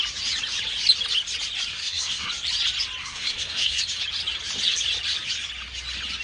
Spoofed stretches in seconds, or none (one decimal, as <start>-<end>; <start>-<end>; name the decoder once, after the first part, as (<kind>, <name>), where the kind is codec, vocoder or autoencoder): 1.7-2.3 (codec, SNAC); 3.0-3.8